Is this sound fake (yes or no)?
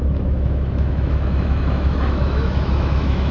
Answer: yes